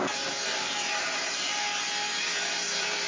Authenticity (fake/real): fake